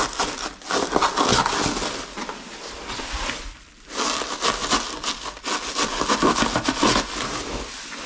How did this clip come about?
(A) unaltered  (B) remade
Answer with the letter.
A